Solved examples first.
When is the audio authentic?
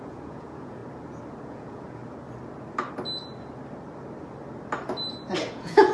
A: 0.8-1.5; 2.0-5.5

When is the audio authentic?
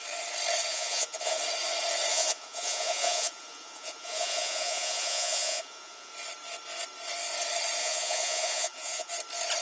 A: 0.0-0.7; 1.4-2.1; 6.1-7.8; 9.1-9.6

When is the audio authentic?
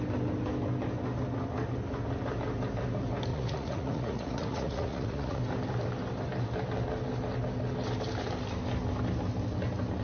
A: 0.0-3.3; 5.4-10.0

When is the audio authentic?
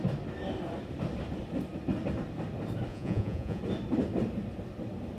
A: 0.0-2.9; 3.6-5.2